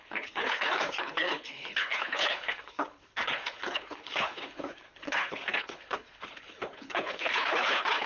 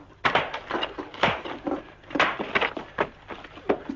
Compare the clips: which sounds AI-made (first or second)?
first